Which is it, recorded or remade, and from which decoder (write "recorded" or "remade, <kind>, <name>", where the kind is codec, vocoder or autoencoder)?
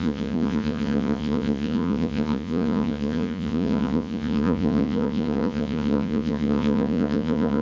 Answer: remade, vocoder, Vocos